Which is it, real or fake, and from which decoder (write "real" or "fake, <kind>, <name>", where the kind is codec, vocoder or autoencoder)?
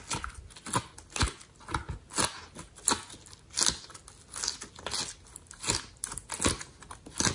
real